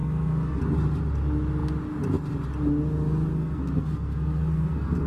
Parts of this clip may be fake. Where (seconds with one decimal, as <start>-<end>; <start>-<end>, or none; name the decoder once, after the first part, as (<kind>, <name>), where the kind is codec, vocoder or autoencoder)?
0.0-0.6 (codec, SNAC); 3.3-5.1